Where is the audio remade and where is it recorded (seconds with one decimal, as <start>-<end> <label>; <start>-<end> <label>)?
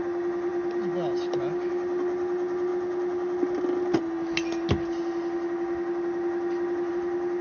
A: 0.0-7.4 recorded